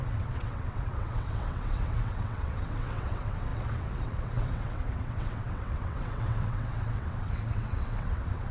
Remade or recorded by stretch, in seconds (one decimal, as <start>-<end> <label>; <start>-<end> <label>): 0.0-8.5 remade